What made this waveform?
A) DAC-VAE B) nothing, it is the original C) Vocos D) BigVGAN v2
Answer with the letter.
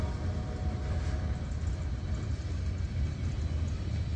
B